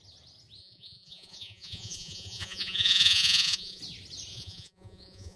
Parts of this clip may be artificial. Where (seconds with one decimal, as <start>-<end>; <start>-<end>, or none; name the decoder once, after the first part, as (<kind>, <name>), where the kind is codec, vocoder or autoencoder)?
0.6-3.8 (vocoder, Vocos); 4.3-5.4